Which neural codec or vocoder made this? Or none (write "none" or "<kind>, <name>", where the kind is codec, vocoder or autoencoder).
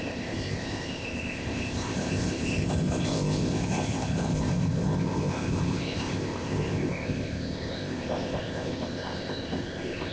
codec, ZipCodec